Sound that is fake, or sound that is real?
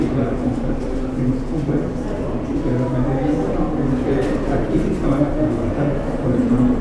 real